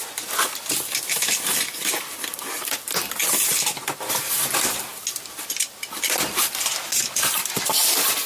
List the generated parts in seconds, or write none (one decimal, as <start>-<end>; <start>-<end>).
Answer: 3.5-4.2